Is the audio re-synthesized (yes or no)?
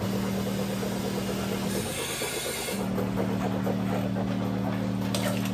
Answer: no